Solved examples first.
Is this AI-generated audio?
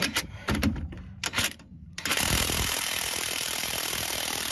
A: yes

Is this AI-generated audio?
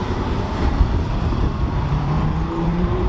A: yes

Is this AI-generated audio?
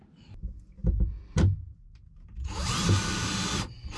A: yes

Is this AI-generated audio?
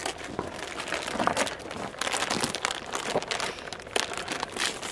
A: no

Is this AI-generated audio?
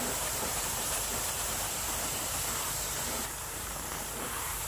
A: yes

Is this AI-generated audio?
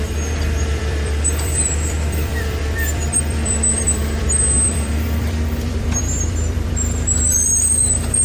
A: yes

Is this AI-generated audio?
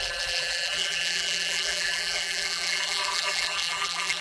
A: yes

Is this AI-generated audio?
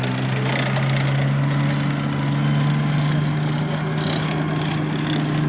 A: no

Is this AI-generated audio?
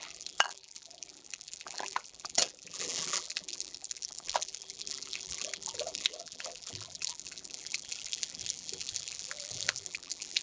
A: yes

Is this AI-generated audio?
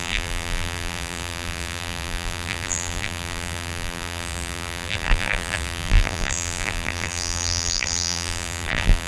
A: yes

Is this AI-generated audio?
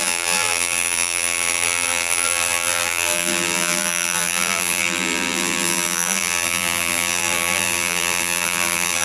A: yes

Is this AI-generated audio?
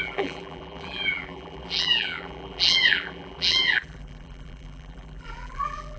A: yes